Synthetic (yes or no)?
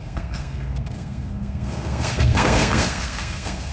yes